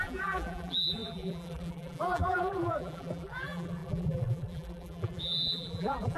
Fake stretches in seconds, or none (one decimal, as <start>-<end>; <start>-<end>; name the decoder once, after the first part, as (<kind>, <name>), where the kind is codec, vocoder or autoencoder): 0.0-6.2 (vocoder, BigVGAN v2)